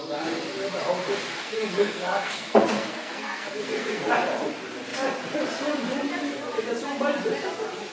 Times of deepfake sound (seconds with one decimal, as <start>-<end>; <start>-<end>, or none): 1.4-4.1